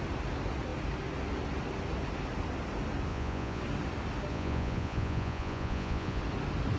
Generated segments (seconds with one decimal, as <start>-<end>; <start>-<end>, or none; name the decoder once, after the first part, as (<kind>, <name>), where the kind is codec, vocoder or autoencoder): 3.1-3.6 (vocoder, Vocos); 4.3-6.2